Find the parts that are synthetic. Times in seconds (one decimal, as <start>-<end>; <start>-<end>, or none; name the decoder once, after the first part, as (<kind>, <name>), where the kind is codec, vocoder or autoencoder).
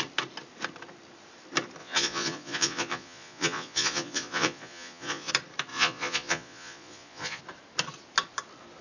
1.8-5.3 (vocoder, Vocos); 5.7-7.4